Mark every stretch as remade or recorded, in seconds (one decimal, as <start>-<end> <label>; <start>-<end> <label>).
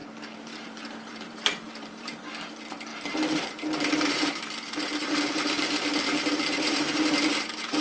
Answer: 0.0-2.3 remade; 2.3-2.9 recorded; 2.9-7.8 remade